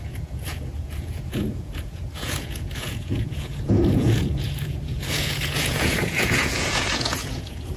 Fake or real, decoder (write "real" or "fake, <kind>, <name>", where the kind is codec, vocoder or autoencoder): fake, vocoder, Vocos